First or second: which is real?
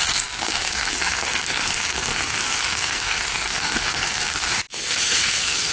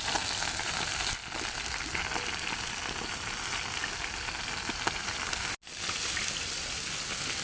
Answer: second